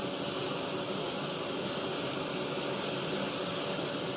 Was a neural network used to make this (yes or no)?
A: no